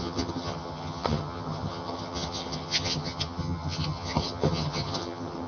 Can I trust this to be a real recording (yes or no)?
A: no